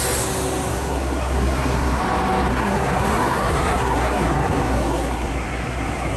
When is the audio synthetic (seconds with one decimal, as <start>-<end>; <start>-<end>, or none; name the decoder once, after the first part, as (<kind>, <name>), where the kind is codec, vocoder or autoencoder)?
0.7-2.0 (codec, SNAC); 2.5-6.2